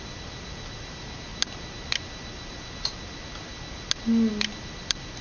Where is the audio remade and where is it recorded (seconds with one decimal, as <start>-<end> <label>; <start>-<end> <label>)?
0.0-1.3 remade; 1.3-2.9 recorded; 2.9-3.5 remade; 3.5-4.8 recorded; 4.8-5.2 remade

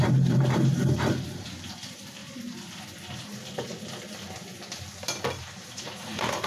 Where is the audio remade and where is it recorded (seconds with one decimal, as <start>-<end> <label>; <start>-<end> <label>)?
0.0-2.2 remade; 2.2-2.9 recorded; 2.9-3.3 remade; 3.3-5.4 recorded; 5.4-6.5 remade

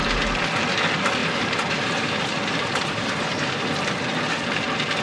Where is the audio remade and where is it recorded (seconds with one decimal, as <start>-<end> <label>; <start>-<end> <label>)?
0.0-1.2 recorded; 1.2-4.2 remade; 4.2-5.0 recorded

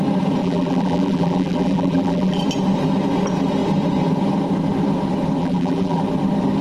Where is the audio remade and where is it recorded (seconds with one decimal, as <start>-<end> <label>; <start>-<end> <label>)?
0.0-0.4 recorded; 0.4-2.4 remade; 2.4-5.4 recorded; 5.4-6.0 remade; 6.0-6.6 recorded